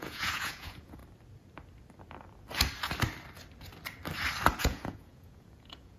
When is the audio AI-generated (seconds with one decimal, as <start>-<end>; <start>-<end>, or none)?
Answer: 0.0-1.0; 4.6-6.0